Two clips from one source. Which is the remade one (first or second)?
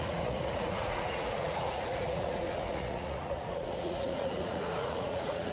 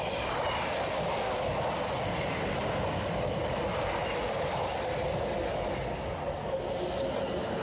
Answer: first